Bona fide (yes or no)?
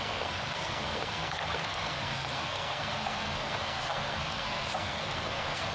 no